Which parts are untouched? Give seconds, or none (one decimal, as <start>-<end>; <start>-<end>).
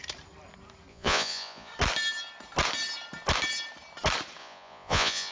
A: 0.0-0.9; 1.7-4.4